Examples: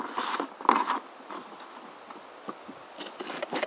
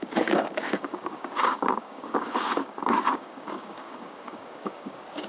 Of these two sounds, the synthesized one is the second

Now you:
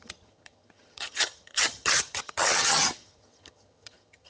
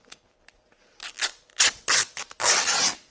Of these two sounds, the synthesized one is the first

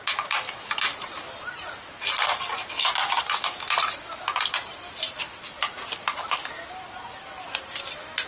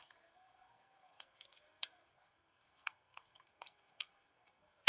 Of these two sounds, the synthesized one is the second